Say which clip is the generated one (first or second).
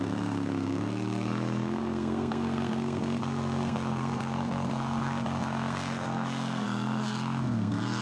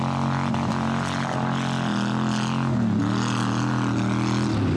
first